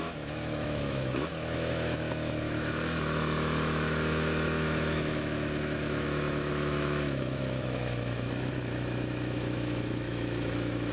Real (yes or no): no